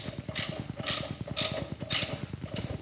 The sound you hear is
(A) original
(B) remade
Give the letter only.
A